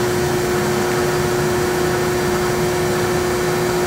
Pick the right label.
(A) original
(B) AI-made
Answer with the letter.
A